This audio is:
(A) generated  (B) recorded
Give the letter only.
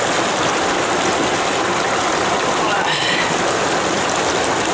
B